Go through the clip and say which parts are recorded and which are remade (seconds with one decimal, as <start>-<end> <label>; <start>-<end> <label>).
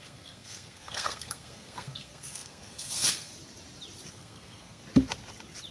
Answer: 0.0-3.3 remade; 3.3-4.1 recorded; 4.1-4.8 remade; 4.8-5.7 recorded